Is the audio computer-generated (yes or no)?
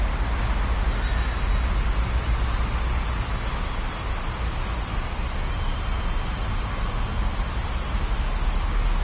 no